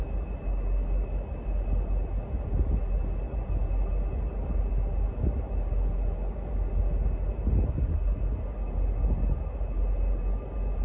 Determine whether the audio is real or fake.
real